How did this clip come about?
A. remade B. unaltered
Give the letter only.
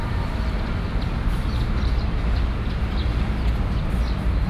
B